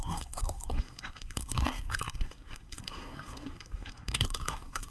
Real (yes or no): no